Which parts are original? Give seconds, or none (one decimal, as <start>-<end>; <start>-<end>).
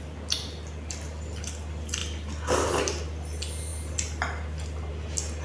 0.0-5.4